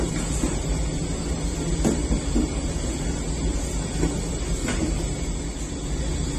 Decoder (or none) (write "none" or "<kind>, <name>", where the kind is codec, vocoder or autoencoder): none